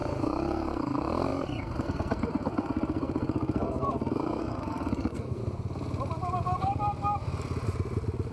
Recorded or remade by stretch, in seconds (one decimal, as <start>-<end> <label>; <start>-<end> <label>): 0.0-5.4 remade; 5.4-8.3 recorded